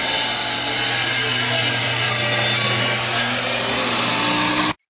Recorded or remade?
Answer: recorded